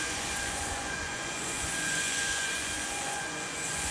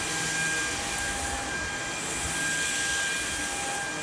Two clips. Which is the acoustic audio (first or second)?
second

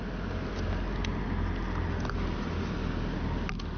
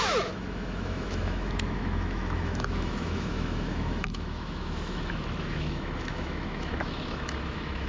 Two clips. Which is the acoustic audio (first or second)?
first